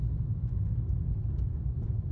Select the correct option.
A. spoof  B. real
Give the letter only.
B